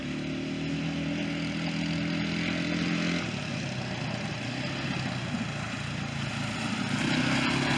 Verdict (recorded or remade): recorded